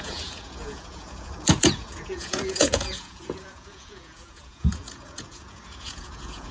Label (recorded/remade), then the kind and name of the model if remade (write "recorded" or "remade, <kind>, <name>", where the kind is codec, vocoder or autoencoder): remade, vocoder, Vocos